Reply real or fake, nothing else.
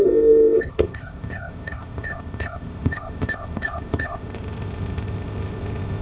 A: fake